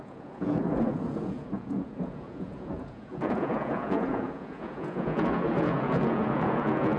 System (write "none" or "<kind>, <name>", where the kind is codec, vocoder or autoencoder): vocoder, Vocos